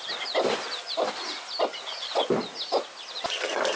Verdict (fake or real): fake